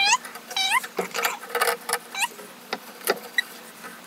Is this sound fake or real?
fake